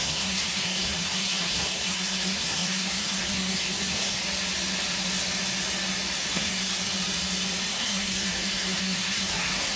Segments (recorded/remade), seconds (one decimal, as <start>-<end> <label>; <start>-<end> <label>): 0.0-4.2 remade; 4.2-6.3 recorded; 6.3-6.8 remade; 6.8-7.7 recorded; 7.7-9.8 remade